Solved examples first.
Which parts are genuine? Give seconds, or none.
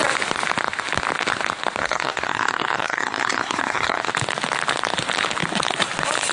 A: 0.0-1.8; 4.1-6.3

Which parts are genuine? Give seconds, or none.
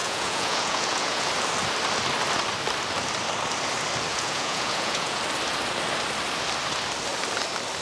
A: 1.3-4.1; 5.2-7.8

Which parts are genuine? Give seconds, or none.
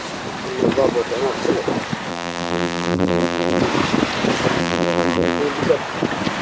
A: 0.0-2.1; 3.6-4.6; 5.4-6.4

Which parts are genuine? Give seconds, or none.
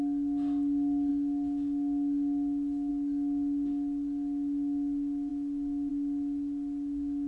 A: 0.0-7.3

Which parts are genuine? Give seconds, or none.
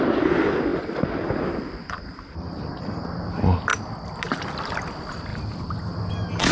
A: 0.0-6.5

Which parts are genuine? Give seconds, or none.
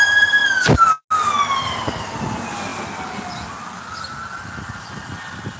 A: 0.0-5.6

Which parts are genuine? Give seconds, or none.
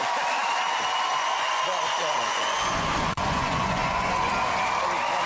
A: 0.0-1.1; 4.3-5.3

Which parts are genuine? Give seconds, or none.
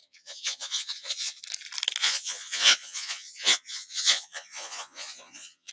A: 1.4-2.0